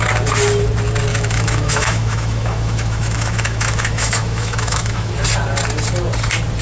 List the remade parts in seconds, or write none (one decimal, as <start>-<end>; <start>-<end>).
1.1-5.1